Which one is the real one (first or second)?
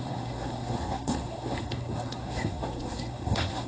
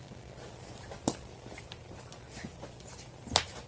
second